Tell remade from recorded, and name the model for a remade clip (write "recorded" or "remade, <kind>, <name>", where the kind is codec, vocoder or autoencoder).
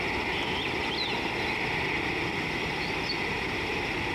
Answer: recorded